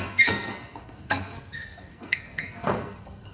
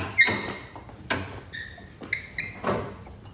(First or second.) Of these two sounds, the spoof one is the first